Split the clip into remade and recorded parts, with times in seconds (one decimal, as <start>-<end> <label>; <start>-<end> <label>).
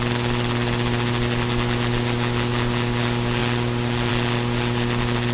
0.0-5.3 recorded